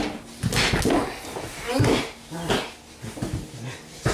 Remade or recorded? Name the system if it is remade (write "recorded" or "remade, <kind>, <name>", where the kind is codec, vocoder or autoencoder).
recorded